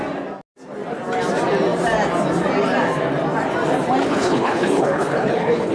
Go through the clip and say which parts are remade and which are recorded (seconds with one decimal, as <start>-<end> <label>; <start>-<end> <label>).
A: 0.0-4.0 recorded; 4.0-5.7 remade